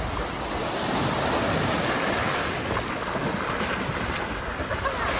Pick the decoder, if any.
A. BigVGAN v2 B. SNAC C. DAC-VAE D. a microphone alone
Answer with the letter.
D